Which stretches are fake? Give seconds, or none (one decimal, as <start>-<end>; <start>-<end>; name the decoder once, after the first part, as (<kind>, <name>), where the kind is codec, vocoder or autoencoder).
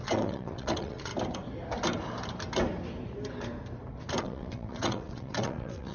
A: 0.0-1.1 (vocoder, WaveNeXt); 4.2-5.9